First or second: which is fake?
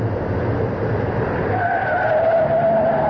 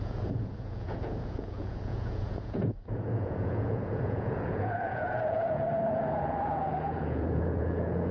second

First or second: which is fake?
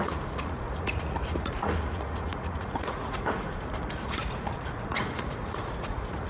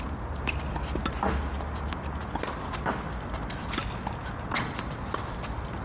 first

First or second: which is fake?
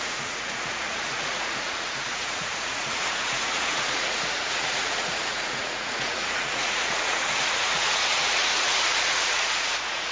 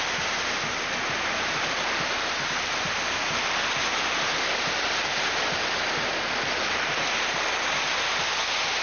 first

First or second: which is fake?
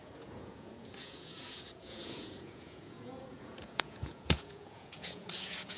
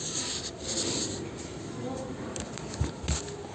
first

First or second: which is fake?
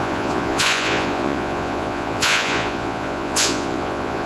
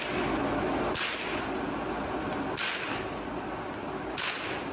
first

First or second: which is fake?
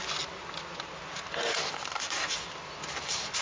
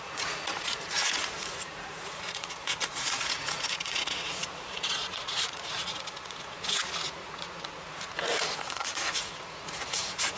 second